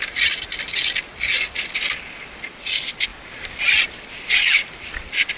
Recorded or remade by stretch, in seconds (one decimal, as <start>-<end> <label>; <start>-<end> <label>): 0.0-5.4 recorded